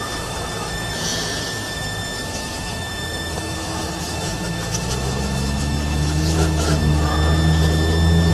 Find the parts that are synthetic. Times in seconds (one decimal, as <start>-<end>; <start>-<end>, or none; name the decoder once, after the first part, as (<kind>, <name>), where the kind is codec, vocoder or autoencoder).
0.0-7.1 (autoencoder, DAC-VAE)